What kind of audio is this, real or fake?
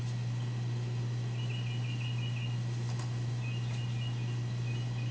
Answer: real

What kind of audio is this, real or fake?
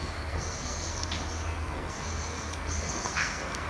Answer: fake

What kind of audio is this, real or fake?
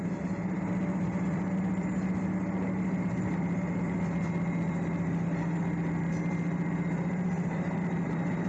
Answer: real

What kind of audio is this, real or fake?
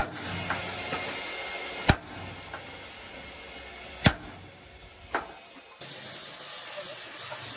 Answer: real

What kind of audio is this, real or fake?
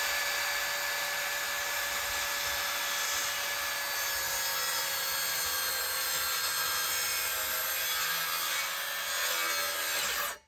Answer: real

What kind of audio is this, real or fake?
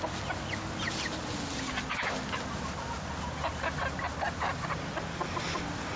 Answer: real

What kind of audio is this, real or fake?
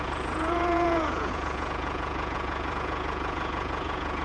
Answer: fake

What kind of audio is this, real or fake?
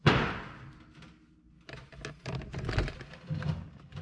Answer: real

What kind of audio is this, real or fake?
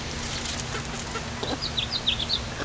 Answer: real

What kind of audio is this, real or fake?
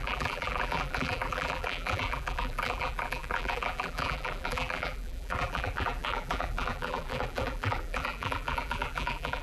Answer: fake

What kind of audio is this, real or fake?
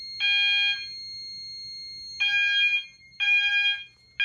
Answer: real